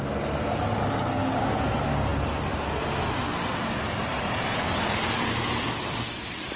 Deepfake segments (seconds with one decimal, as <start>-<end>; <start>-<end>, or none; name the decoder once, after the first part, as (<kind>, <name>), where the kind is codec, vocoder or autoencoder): 1.2-1.7 (codec, DAC)